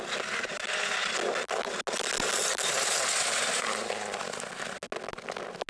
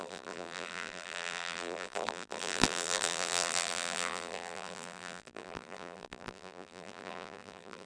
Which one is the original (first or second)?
first